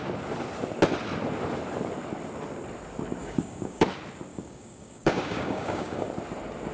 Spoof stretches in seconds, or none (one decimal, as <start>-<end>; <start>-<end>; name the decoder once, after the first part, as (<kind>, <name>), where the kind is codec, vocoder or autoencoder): 3.2-3.8 (codec, DAC); 4.3-6.1